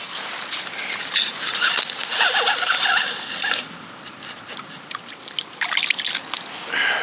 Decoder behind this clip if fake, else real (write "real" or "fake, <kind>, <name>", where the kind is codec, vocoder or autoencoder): real